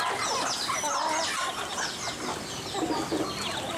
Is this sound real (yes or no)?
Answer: yes